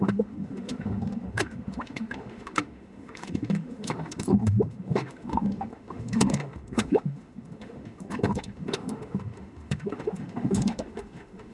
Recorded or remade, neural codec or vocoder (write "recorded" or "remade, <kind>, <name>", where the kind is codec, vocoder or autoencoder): remade, autoencoder, DAC-VAE